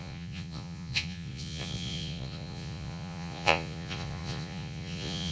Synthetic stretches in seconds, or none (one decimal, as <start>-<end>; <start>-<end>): 0.0-5.3